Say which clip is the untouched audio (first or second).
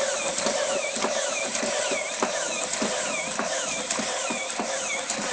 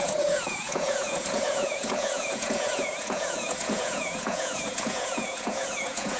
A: first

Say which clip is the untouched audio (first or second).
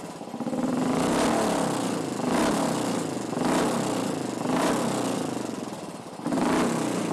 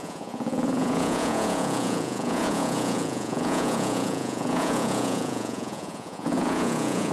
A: first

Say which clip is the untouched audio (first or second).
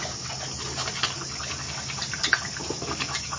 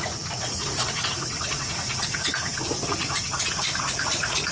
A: first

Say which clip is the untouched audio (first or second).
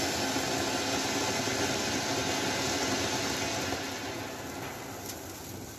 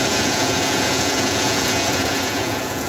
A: first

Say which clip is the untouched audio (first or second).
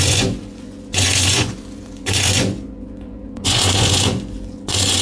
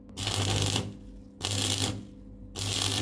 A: second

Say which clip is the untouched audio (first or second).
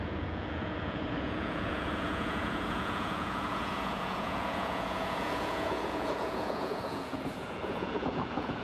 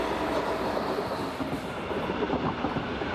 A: second